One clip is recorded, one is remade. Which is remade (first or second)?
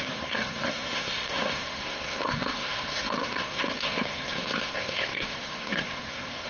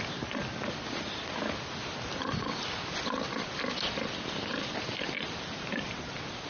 first